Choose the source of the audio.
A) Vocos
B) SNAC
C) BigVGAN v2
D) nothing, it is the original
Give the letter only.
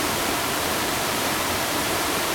C